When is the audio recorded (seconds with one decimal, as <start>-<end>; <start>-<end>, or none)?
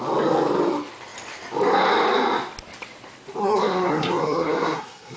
0.0-3.4